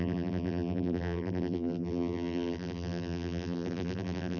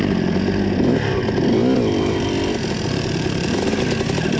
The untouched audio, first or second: second